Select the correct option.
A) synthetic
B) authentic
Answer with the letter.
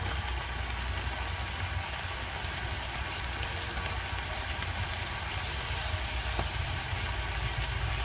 B